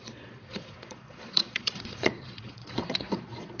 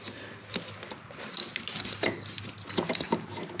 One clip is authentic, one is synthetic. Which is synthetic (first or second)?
first